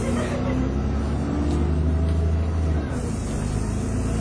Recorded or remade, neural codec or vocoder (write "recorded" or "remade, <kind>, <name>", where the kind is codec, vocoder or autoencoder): recorded